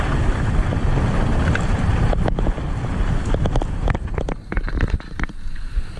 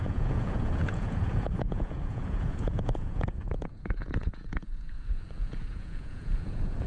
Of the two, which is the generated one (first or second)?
second